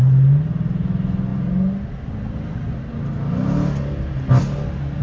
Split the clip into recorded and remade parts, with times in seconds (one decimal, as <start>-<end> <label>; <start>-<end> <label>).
0.0-5.0 recorded